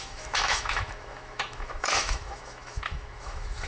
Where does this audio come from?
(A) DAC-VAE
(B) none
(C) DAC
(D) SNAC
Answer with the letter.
A